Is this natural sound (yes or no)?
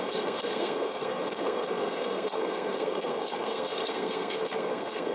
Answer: no